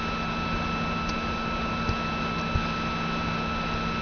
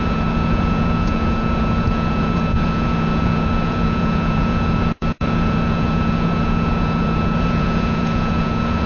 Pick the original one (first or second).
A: first